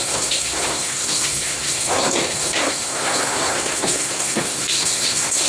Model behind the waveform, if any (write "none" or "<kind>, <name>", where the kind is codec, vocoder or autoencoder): codec, SNAC